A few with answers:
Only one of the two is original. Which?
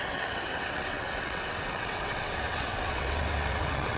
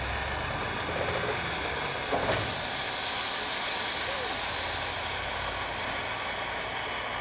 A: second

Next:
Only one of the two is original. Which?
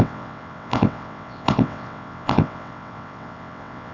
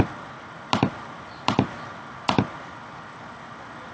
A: second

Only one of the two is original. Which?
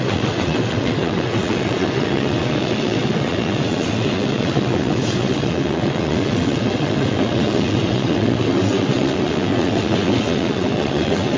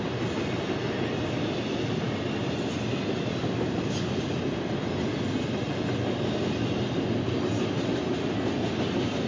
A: second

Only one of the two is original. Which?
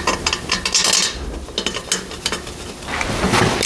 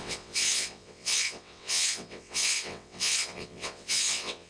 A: first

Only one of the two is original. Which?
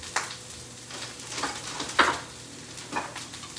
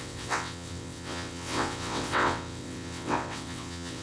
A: first